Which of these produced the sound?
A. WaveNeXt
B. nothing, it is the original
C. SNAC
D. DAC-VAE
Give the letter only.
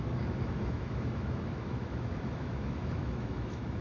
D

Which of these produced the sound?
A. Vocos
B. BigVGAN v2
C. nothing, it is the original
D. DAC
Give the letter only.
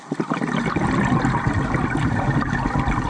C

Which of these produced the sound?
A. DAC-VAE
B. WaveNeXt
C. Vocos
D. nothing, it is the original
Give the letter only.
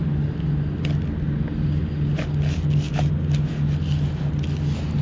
D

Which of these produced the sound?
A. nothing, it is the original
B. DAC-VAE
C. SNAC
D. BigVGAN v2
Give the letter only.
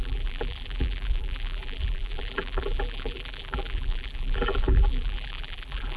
D